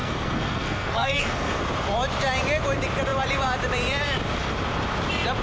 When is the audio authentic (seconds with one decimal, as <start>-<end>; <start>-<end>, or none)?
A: 1.6-5.4